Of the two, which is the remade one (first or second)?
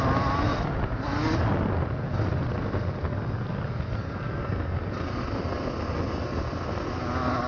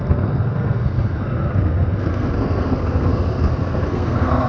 second